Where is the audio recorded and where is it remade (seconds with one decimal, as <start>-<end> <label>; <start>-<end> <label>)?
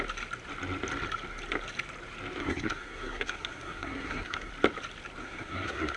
0.0-2.4 recorded; 2.4-4.5 remade; 4.5-5.2 recorded; 5.2-6.0 remade